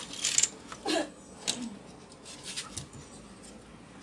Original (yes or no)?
yes